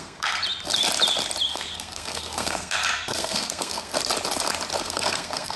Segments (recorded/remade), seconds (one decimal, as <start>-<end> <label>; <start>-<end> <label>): 0.0-0.4 remade; 0.4-1.5 recorded; 1.5-3.9 remade; 3.9-4.8 recorded; 4.8-5.6 remade